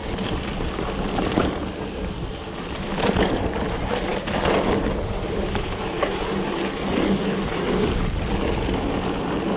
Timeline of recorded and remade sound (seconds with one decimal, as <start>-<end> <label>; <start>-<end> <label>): 0.0-9.6 recorded